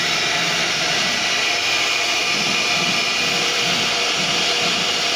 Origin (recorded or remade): recorded